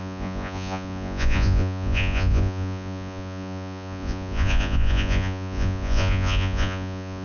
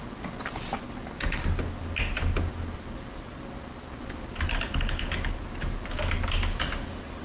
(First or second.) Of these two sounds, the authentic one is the second